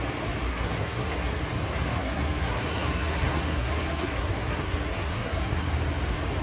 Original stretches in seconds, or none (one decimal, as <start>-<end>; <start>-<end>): 0.0-0.5; 1.4-1.9; 5.7-6.4